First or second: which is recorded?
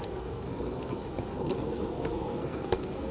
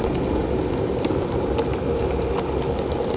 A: second